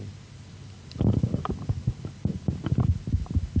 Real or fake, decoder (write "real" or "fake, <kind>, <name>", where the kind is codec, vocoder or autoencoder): real